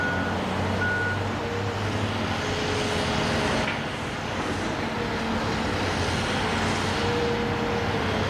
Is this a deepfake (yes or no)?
no